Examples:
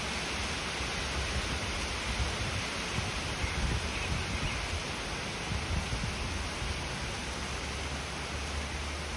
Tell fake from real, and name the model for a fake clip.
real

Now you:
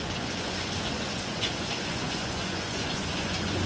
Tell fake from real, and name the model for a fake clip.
fake, vocoder, Vocos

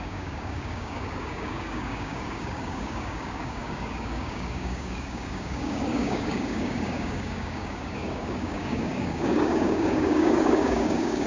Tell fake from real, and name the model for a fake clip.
fake, codec, DAC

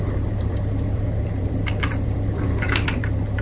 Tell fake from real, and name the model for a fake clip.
fake, vocoder, BigVGAN v2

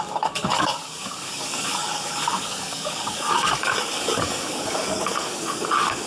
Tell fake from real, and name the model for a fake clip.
fake, codec, DAC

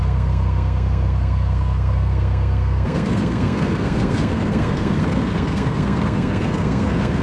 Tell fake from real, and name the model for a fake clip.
fake, codec, SNAC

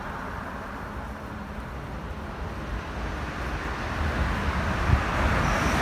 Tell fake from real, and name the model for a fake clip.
real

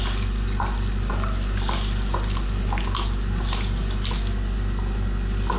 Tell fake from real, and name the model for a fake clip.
fake, vocoder, BigVGAN v2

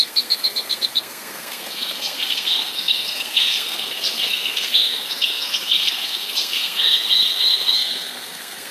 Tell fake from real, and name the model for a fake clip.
fake, codec, SNAC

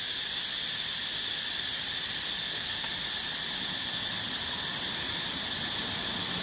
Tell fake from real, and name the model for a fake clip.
real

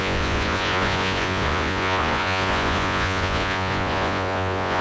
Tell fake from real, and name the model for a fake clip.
fake, vocoder, Vocos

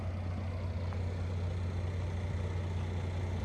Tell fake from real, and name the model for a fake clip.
real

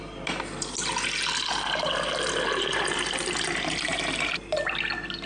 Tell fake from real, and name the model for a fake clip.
real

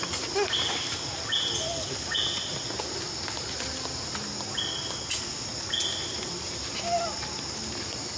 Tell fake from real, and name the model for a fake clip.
real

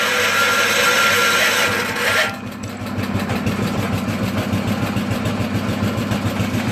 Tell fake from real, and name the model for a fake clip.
real